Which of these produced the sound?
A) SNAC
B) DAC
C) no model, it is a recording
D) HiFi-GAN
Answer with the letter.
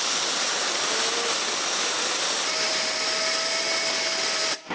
C